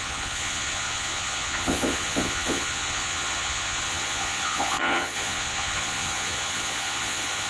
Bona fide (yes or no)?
no